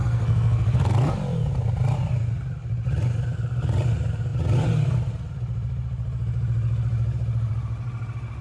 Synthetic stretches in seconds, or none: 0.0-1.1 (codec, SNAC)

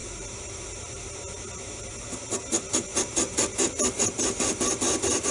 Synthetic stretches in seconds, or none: none

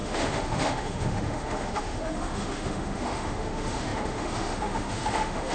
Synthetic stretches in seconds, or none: 0.0-5.5 (autoencoder, DAC-VAE)